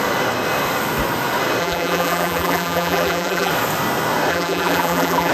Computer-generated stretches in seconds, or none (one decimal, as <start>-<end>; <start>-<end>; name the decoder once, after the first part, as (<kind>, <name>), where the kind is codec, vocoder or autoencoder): 1.6-3.5 (vocoder, BigVGAN v2); 4.3-5.3

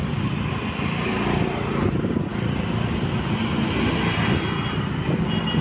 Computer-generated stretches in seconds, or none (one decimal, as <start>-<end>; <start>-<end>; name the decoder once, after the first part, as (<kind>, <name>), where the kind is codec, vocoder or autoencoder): none